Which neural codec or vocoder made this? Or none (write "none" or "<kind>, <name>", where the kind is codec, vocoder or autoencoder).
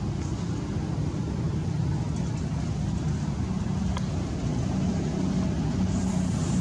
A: none